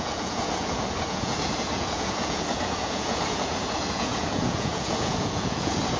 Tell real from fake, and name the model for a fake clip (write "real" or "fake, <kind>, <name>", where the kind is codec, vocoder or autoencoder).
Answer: fake, vocoder, Vocos